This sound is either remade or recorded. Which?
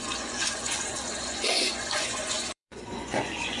remade